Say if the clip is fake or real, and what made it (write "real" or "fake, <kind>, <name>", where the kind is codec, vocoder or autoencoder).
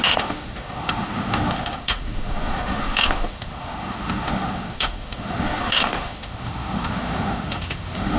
fake, autoencoder, DAC-VAE